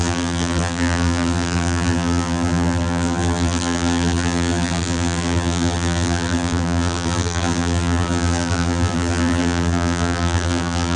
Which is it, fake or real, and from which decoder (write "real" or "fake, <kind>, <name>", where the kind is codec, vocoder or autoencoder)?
fake, vocoder, BigVGAN v2